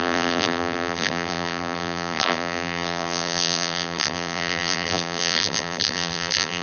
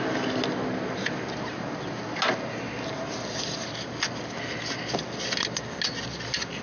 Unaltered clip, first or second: second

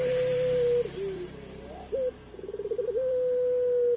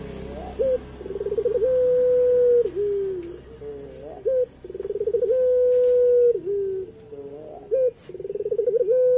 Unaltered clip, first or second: second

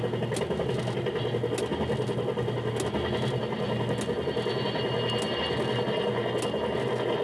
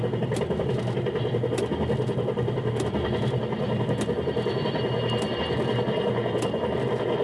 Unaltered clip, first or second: first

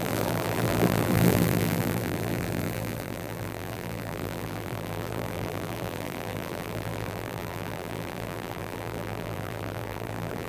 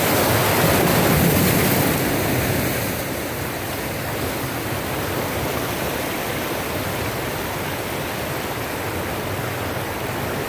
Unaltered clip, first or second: second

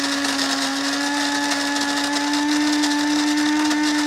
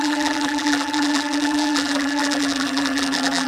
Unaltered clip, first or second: first